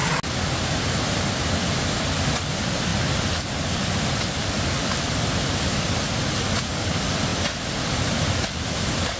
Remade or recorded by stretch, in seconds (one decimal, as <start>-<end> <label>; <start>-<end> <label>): 0.0-2.9 recorded; 2.9-5.6 remade; 5.6-9.2 recorded